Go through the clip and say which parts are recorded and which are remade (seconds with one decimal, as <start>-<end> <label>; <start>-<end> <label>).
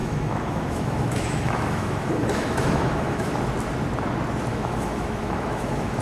0.0-3.4 remade; 3.4-4.5 recorded; 4.5-6.0 remade